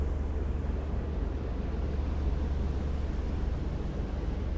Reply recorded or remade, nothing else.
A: recorded